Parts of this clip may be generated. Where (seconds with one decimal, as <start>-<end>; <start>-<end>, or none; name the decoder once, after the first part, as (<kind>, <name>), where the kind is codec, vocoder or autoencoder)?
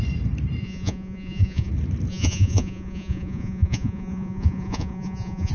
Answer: 0.6-1.7 (vocoder, Vocos); 2.1-5.5